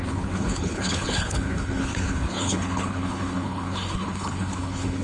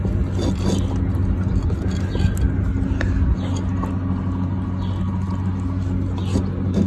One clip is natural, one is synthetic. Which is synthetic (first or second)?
first